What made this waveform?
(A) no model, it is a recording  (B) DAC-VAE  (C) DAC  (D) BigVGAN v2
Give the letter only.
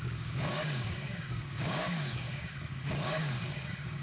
C